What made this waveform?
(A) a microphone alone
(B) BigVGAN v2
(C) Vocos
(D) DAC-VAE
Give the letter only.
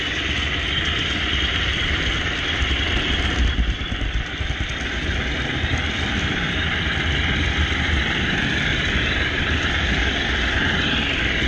A